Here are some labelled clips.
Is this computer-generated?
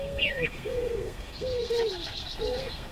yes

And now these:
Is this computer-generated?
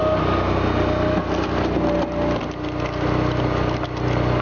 no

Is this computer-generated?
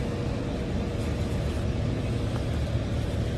no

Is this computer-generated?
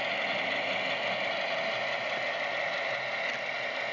no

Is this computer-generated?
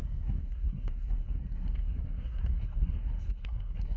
yes